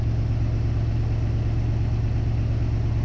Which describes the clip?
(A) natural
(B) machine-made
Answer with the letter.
A